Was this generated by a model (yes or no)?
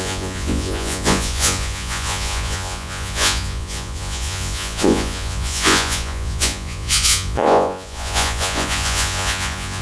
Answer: yes